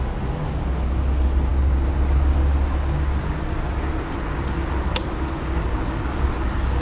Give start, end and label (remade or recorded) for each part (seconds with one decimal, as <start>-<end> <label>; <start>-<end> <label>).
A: 0.0-6.8 recorded